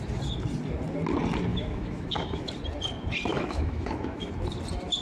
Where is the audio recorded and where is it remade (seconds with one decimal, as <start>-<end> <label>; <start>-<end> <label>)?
0.0-1.5 recorded; 1.5-2.5 remade; 2.5-3.3 recorded; 3.3-4.3 remade; 4.3-5.0 recorded